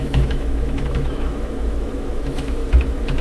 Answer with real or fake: fake